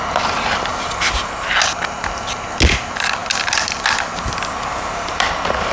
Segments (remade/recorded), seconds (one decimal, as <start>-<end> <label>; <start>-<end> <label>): 0.0-0.7 recorded; 0.7-1.3 remade; 1.3-5.7 recorded